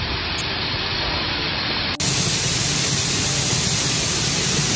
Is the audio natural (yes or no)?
yes